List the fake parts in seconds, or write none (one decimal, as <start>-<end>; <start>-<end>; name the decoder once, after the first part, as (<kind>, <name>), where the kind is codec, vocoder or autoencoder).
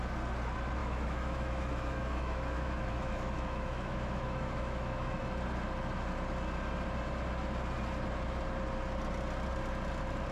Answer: 0.8-5.2 (autoencoder, DAC-VAE)